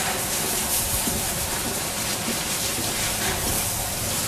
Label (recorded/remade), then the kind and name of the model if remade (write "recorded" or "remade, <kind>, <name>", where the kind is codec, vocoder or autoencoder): recorded